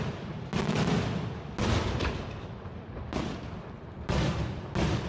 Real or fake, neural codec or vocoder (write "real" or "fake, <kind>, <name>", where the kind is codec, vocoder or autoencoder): real